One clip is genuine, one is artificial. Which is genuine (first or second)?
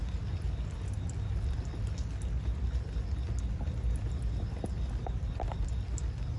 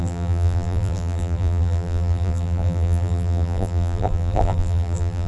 first